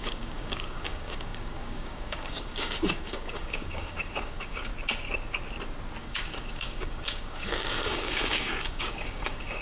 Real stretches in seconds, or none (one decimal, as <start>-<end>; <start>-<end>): 4.7-6.0